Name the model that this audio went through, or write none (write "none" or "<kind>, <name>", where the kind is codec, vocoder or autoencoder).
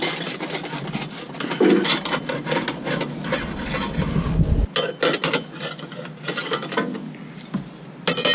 none